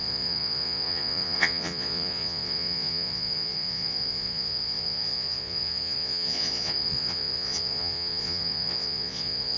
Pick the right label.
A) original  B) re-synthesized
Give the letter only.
B